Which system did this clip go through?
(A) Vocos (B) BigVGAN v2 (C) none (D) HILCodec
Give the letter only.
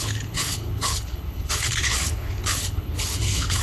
D